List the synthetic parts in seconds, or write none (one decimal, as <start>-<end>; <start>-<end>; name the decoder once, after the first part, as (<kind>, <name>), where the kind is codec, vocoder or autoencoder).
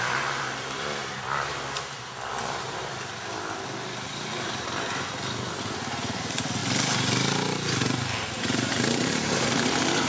0.0-6.6 (vocoder, BigVGAN v2); 8.4-10.1